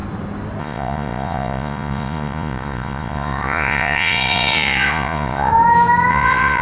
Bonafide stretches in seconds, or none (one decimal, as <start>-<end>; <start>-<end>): 0.0-0.6; 5.5-6.1